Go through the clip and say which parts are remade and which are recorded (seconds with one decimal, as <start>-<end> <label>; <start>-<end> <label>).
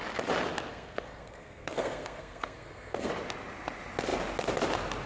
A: 0.0-0.7 recorded; 0.7-3.1 remade; 3.1-5.1 recorded